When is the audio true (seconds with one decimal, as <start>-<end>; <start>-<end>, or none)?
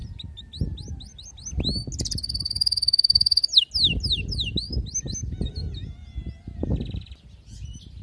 0.0-8.0